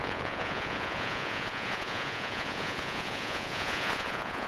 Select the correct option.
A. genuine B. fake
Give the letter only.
B